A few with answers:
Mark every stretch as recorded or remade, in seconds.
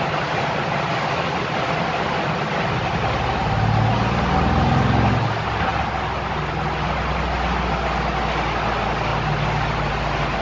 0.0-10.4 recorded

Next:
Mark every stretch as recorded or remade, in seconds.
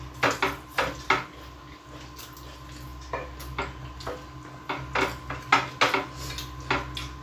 0.0-7.2 recorded